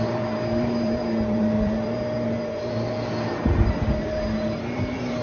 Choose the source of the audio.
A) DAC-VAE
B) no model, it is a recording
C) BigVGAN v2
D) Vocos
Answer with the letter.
C